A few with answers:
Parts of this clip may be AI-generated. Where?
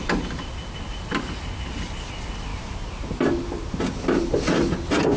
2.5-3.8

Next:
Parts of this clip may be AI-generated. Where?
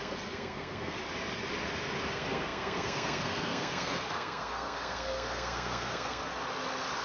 0.0-1.0; 2.1-6.3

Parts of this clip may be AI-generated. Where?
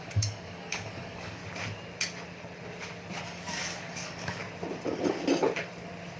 0.0-1.4; 3.2-4.4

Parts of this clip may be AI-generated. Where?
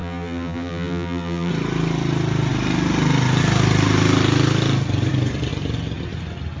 0.0-1.5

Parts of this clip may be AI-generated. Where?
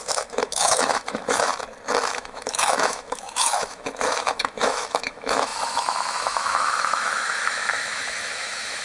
0.0-1.5; 2.1-8.8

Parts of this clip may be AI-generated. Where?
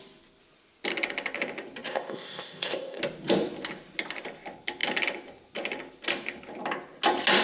1.9-3.0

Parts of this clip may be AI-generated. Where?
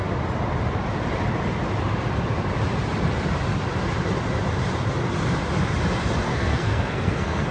6.3-7.5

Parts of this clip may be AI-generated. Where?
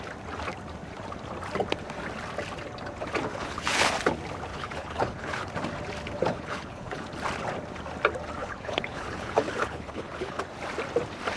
3.3-3.9; 4.5-5.5; 6.3-7.1; 8.4-10.4